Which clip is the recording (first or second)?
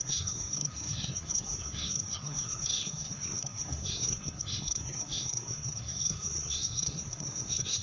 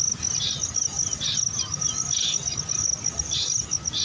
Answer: second